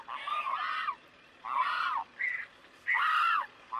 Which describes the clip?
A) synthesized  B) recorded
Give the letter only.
B